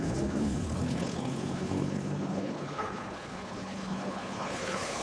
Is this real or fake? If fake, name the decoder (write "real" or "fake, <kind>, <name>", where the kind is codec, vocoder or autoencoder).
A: fake, codec, HILCodec